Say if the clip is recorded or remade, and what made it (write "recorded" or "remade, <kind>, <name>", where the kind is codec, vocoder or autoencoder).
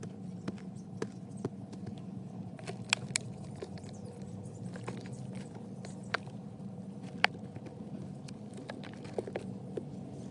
recorded